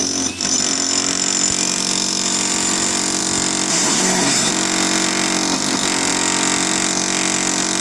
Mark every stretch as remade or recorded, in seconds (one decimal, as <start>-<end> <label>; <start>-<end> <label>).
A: 0.0-3.7 recorded; 3.7-4.5 remade; 4.5-7.8 recorded